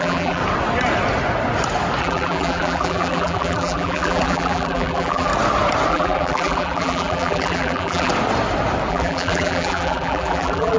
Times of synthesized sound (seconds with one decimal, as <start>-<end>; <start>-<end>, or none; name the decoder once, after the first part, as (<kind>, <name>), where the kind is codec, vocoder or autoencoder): 0.0-0.4 (vocoder, BigVGAN v2); 2.0-5.3; 5.9-8.1; 8.9-10.8